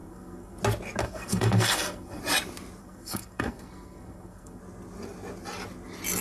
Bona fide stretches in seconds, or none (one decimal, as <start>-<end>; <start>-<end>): 0.6-1.0; 2.2-2.8; 4.6-6.2